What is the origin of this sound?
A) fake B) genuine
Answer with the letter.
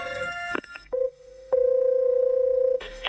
A